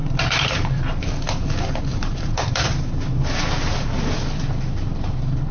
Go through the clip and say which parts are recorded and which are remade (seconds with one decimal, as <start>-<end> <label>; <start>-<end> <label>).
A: 0.0-1.1 remade; 1.1-1.9 recorded; 1.9-2.8 remade; 2.8-5.5 recorded